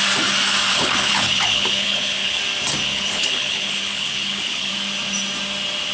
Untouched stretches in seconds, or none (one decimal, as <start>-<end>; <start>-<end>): 0.0-0.7; 2.4-2.9; 4.7-5.9